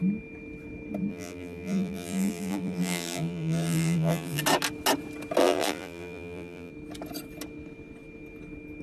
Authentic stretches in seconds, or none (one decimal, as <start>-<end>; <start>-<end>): 0.0-1.1; 4.4-5.4; 6.7-8.8